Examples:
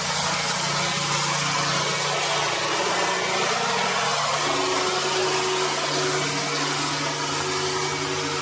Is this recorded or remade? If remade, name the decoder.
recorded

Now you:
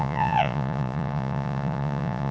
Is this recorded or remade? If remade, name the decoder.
remade, vocoder, Vocos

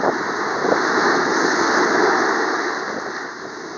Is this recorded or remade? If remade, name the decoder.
recorded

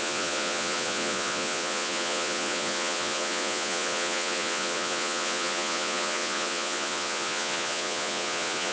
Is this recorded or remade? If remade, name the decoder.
remade, vocoder, Vocos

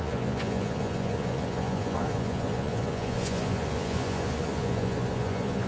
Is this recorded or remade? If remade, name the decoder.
remade, vocoder, Vocos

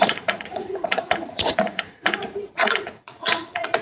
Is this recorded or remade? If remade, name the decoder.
remade, vocoder, Vocos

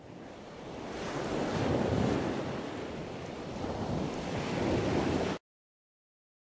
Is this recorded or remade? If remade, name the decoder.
recorded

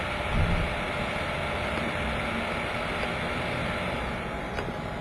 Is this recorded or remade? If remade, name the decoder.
recorded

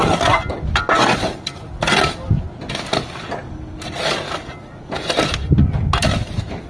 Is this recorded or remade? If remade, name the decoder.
recorded